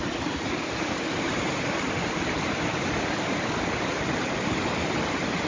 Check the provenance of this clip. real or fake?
real